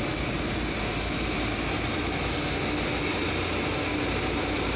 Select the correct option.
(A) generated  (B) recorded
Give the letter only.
B